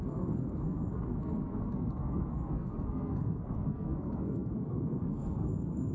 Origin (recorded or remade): remade